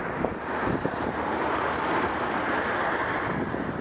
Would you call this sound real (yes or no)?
yes